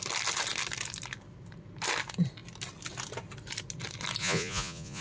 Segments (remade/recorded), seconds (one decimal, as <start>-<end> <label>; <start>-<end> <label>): 0.0-4.2 recorded; 4.2-5.0 remade